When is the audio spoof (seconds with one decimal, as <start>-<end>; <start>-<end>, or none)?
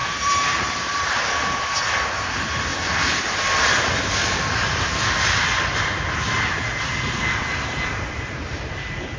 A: 0.0-1.3